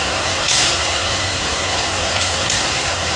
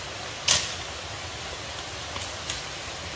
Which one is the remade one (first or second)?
first